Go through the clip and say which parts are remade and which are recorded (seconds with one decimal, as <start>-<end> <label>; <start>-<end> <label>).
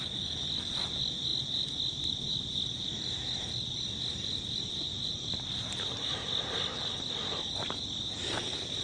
0.0-8.8 recorded